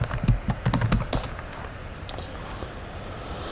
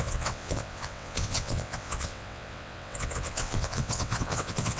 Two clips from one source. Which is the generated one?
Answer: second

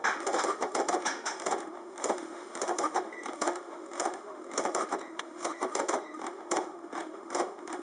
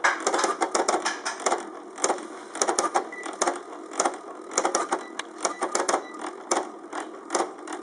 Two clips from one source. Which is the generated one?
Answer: first